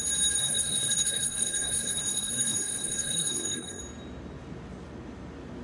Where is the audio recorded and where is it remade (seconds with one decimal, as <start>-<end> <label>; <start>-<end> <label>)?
0.0-0.4 recorded; 0.4-3.8 remade; 3.8-5.6 recorded